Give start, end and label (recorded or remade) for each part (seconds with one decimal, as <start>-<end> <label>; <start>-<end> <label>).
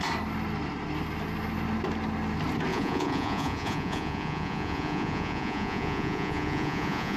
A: 0.0-2.7 recorded; 2.7-7.2 remade